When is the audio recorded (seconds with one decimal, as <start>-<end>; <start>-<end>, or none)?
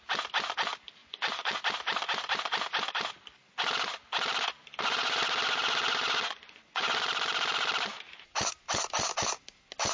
0.0-1.0; 1.6-4.8; 7.0-9.9